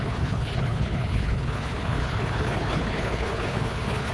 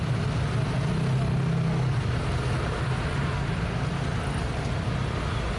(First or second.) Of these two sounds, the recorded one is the second